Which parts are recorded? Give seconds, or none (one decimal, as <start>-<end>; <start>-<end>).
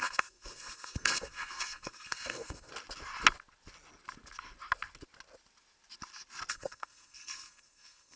2.7-6.5